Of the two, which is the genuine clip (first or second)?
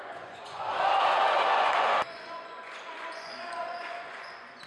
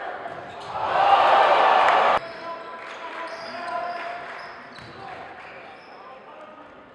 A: second